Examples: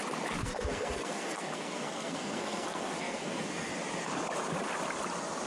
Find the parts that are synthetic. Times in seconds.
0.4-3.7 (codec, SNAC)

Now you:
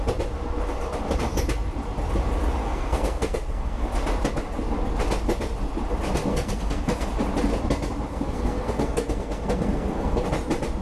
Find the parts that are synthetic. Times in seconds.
2.6-3.9 (codec, SNAC); 6.3-7.1; 8.1-10.3

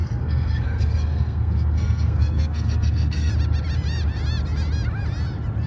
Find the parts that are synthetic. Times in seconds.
0.0-3.3 (codec, SNAC)

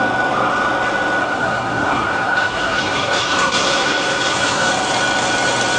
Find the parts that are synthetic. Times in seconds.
1.2-4.7 (codec, SNAC)

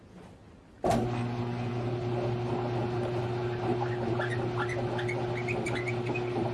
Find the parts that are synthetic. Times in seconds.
none

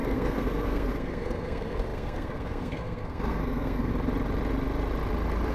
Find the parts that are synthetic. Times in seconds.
0.0-3.9 (codec, SNAC)